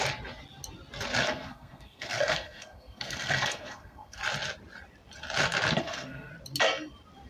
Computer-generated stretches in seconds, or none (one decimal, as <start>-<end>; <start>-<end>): 1.2-4.2; 5.8-6.3